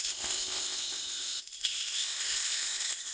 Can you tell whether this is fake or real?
fake